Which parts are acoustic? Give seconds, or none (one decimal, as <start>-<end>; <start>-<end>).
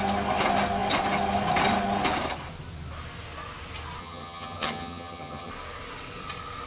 0.0-4.0; 5.5-6.7